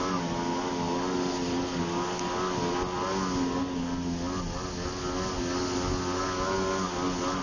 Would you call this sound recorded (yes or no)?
yes